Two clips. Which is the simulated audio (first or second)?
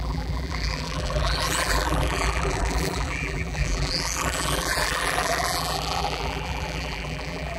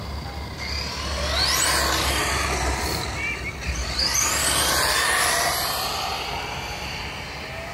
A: first